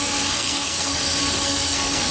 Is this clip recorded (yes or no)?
no